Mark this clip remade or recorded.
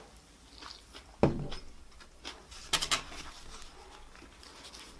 recorded